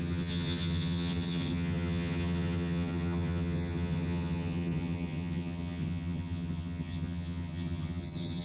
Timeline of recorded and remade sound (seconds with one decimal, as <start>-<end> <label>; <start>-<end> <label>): 0.0-8.4 remade